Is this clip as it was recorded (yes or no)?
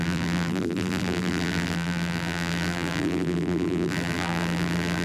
no